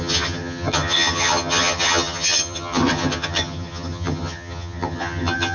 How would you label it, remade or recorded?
remade